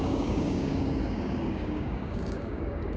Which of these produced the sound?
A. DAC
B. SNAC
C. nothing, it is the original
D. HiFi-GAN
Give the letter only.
A